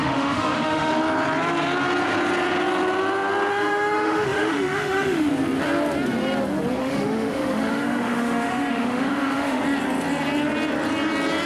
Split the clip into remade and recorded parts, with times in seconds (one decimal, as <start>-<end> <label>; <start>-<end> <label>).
0.0-0.9 remade; 0.9-3.5 recorded; 3.5-5.3 remade; 5.3-6.8 recorded; 6.8-9.6 remade; 9.6-11.5 recorded